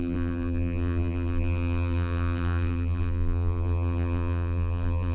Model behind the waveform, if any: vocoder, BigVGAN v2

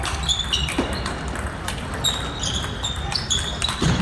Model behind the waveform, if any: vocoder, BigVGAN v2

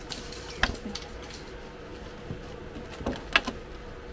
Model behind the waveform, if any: none